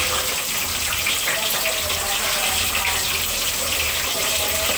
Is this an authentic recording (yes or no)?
yes